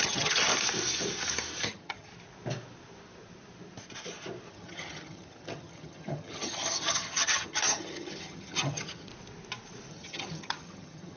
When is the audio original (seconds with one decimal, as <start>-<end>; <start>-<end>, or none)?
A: 0.5-1.6; 2.1-4.5; 9.1-9.9